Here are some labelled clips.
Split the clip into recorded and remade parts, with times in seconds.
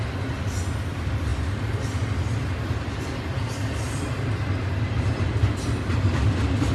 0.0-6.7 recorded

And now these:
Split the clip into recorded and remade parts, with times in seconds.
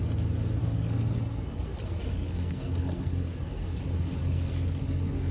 0.0-0.6 recorded; 0.6-3.8 remade; 3.8-4.2 recorded; 4.2-5.3 remade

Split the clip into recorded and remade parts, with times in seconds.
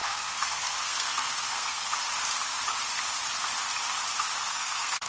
0.0-1.9 remade; 1.9-4.4 recorded; 4.4-5.1 remade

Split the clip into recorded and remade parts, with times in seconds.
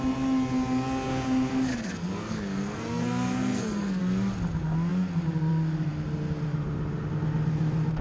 0.0-1.7 recorded; 1.7-4.0 remade; 4.0-8.0 recorded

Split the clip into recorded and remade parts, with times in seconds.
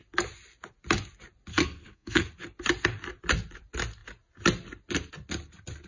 0.0-1.5 recorded; 1.5-2.3 remade; 2.3-5.9 recorded